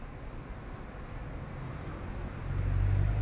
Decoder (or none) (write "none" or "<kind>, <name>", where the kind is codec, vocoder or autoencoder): none